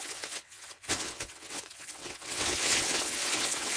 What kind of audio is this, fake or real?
fake